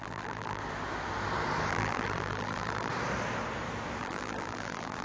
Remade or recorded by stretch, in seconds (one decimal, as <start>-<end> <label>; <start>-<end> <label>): 0.0-0.6 remade; 0.6-1.7 recorded; 1.7-2.9 remade; 2.9-4.0 recorded; 4.0-5.0 remade